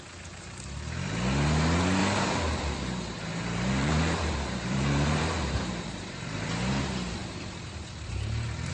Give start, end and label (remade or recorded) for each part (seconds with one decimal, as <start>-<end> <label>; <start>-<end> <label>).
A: 0.0-2.0 recorded; 2.0-6.8 remade; 6.8-8.7 recorded